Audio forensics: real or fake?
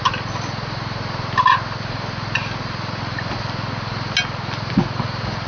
real